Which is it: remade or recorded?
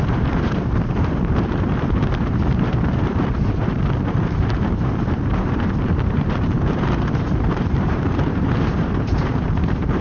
remade